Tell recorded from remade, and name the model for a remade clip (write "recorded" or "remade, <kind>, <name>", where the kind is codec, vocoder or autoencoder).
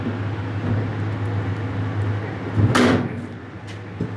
recorded